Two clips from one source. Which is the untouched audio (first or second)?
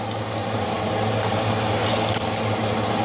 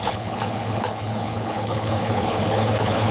first